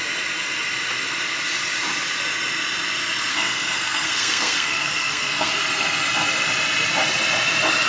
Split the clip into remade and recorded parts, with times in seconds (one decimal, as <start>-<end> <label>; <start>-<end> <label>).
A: 0.0-3.3 recorded; 3.3-5.5 remade; 5.5-7.9 recorded

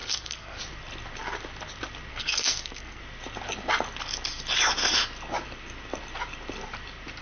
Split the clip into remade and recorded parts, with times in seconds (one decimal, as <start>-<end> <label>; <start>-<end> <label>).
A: 0.0-0.6 remade; 0.6-2.1 recorded; 2.1-3.0 remade; 3.0-7.2 recorded

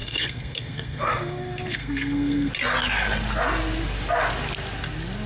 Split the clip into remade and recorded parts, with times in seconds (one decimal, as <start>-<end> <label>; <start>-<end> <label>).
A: 0.0-2.5 remade; 2.5-5.3 recorded

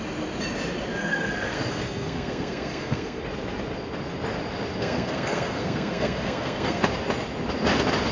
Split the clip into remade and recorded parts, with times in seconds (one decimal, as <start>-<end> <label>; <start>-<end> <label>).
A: 0.0-1.0 recorded; 1.0-3.2 remade; 3.2-4.8 recorded; 4.8-6.8 remade; 6.8-8.1 recorded

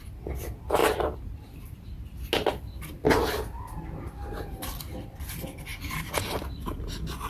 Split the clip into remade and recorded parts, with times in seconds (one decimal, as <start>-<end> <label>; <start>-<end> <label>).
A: 0.0-7.3 recorded